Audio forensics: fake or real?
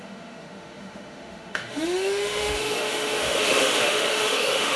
fake